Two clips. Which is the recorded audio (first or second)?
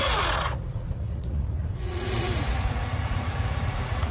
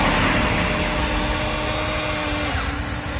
second